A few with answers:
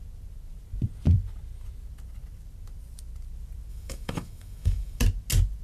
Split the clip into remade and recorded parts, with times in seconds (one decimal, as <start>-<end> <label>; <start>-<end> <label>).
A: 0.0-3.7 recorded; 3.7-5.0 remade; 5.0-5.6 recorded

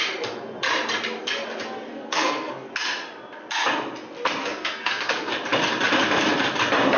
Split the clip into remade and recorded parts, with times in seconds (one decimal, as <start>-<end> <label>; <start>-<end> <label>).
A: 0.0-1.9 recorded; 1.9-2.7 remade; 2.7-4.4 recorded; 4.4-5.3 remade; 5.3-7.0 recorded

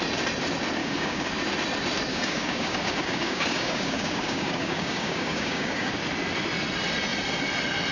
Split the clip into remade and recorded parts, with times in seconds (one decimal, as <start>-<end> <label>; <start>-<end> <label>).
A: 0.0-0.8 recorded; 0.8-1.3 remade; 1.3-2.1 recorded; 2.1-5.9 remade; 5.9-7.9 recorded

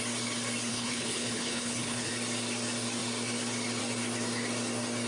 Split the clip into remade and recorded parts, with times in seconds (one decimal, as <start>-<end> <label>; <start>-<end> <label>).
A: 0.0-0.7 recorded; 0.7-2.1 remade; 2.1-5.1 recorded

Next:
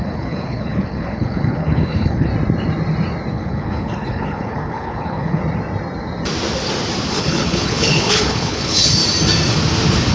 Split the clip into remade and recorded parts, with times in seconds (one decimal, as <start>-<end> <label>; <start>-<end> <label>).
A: 0.0-2.3 remade; 2.3-3.3 recorded; 3.3-5.4 remade; 5.4-7.1 recorded; 7.1-9.0 remade; 9.0-10.1 recorded

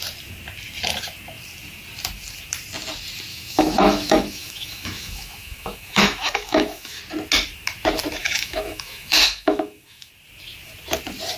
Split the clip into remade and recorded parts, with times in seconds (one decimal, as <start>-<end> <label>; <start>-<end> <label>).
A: 0.0-3.3 recorded; 3.3-7.0 remade; 7.0-8.2 recorded; 8.2-10.1 remade; 10.1-11.4 recorded

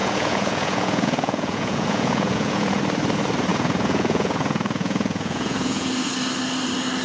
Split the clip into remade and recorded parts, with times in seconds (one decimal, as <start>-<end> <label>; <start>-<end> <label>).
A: 0.0-2.8 remade; 2.8-3.5 recorded; 3.5-5.9 remade; 5.9-7.0 recorded

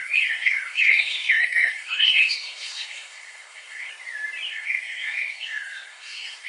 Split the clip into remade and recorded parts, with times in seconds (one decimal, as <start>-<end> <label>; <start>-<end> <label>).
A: 0.0-3.9 remade; 3.9-4.5 recorded; 4.5-6.5 remade